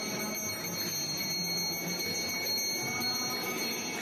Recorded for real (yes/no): yes